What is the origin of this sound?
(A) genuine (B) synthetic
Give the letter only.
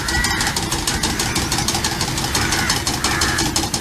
A